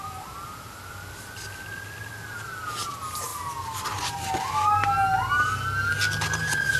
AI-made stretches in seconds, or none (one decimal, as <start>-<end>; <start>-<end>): none